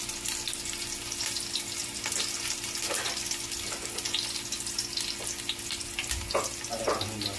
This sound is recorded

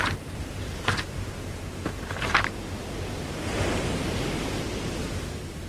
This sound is remade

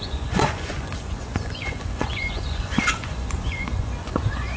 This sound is remade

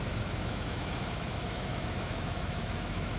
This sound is remade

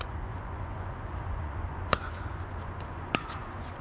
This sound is remade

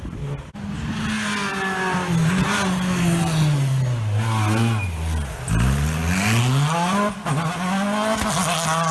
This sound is recorded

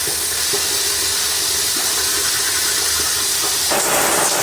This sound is recorded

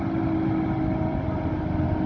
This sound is recorded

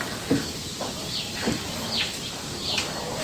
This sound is recorded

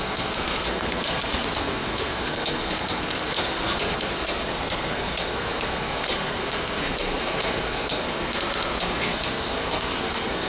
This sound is remade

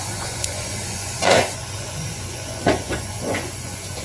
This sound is remade